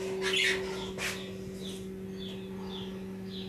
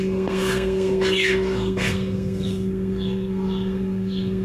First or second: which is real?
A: first